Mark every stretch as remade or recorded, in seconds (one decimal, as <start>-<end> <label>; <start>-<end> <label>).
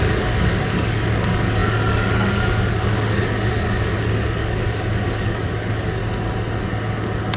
0.0-6.0 remade; 6.0-6.6 recorded; 6.6-7.4 remade